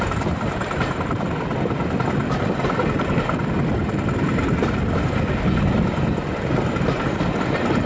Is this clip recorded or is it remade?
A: recorded